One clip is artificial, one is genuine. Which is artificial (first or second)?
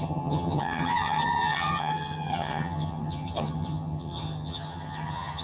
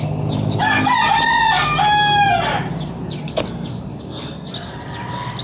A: first